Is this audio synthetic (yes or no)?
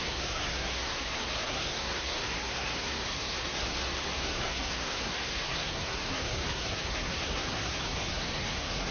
yes